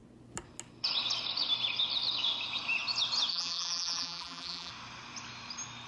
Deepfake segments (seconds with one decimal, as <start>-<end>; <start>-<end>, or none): 3.3-4.7